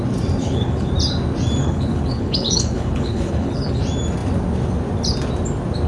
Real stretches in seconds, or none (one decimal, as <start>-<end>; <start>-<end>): 0.0-0.4; 0.9-1.6; 3.8-5.9